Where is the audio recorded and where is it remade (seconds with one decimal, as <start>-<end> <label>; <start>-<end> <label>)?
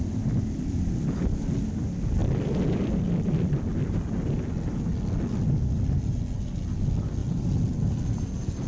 0.0-2.2 recorded; 2.2-4.2 remade; 4.2-7.2 recorded; 7.2-7.9 remade; 7.9-8.7 recorded